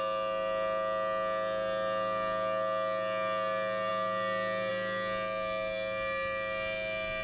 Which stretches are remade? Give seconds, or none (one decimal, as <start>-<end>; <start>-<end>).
none